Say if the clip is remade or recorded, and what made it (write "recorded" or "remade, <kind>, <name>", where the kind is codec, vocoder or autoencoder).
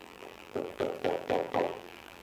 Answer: remade, vocoder, BigVGAN v2